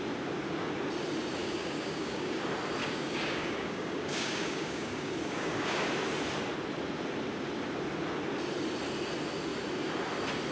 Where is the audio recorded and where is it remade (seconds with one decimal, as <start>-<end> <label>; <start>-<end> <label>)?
0.0-1.4 recorded; 1.4-2.4 remade; 2.4-2.8 recorded; 2.8-5.9 remade; 5.9-10.5 recorded